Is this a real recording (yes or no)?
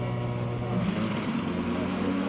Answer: yes